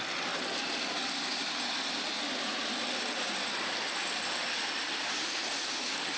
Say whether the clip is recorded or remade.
recorded